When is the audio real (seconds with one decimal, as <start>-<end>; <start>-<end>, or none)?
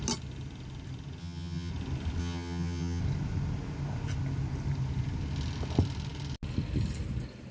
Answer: 0.0-1.2; 1.7-2.2; 3.0-7.5